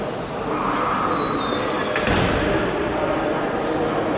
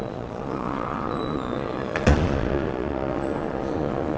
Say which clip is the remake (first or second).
second